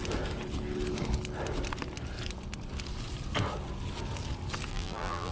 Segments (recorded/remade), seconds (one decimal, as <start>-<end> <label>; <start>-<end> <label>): 0.0-4.7 recorded; 4.7-5.3 remade

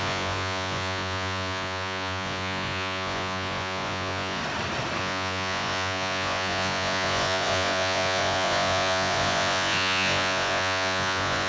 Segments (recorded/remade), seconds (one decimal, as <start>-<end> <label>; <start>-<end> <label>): 0.0-4.4 remade; 4.4-5.0 recorded; 5.0-11.5 remade

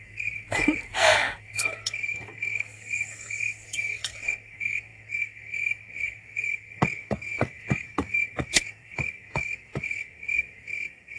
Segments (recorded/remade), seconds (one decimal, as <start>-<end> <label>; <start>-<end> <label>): 0.0-11.2 remade